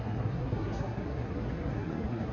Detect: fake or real fake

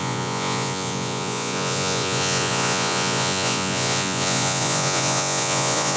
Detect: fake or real fake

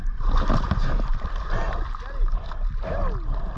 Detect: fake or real real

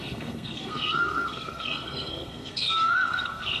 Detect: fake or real fake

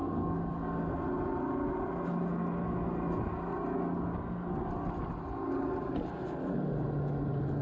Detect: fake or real real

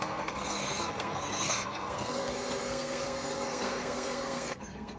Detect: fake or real fake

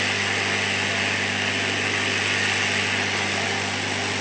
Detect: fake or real real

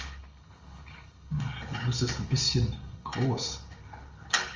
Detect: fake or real fake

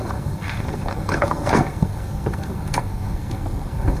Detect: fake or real fake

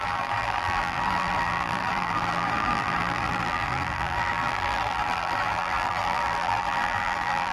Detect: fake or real fake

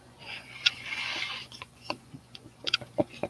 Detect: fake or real fake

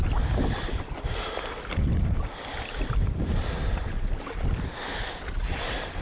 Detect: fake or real real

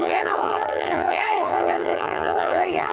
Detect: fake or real fake